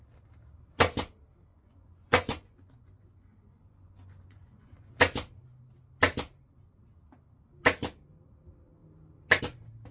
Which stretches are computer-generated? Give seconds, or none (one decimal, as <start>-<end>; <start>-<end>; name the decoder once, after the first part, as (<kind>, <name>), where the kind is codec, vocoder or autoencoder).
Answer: 1.5-4.9 (vocoder, Vocos)